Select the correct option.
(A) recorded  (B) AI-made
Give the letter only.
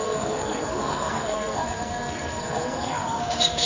B